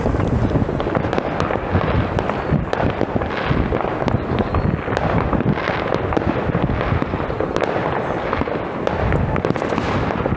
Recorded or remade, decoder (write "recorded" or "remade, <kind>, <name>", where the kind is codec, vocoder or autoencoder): recorded